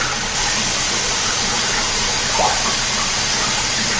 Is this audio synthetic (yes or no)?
no